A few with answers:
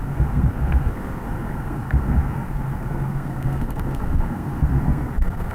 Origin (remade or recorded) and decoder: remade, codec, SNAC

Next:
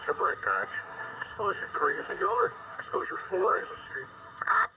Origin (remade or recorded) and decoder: remade, codec, SNAC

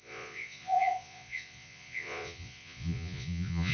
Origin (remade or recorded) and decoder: remade, vocoder, Vocos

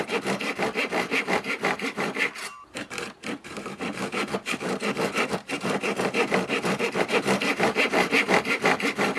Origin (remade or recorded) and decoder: remade, vocoder, BigVGAN v2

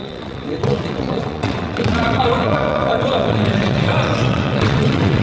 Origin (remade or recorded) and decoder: remade, vocoder, WaveNeXt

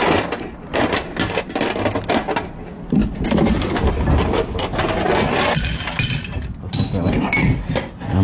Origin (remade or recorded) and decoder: recorded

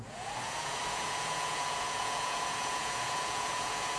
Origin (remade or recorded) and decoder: remade, vocoder, Vocos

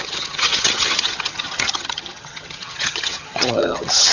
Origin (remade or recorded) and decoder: remade, vocoder, HiFi-GAN